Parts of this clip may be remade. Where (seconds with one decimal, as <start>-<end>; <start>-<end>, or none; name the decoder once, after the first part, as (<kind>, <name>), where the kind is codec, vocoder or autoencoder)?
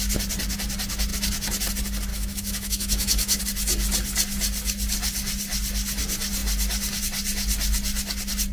2.1-3.4 (autoencoder, DAC-VAE)